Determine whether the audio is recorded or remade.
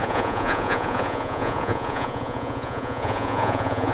remade